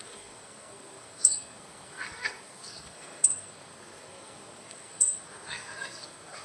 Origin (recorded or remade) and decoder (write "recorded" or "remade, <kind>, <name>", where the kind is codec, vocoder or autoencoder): remade, codec, SNAC